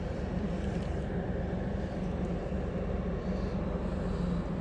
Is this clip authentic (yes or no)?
no